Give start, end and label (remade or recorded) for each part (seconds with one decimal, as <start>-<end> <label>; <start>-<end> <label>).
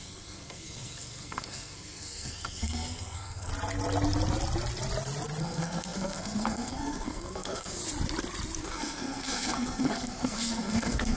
0.0-3.5 remade; 3.5-5.4 recorded; 5.4-7.8 remade; 7.8-8.6 recorded; 8.6-11.2 remade